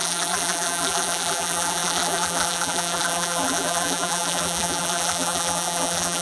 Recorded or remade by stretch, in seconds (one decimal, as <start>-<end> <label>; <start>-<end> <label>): 0.0-6.2 remade